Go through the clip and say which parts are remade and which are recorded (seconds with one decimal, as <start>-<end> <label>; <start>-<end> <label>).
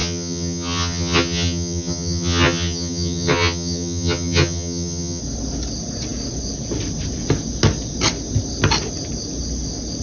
0.0-5.2 remade; 5.2-10.0 recorded